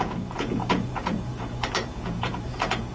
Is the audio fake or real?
fake